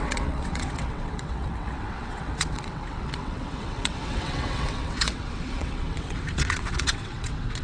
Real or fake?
fake